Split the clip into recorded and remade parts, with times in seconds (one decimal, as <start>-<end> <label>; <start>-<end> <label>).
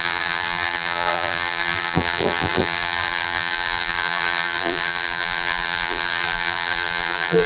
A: 0.0-7.5 remade